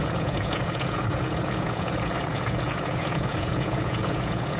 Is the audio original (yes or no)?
no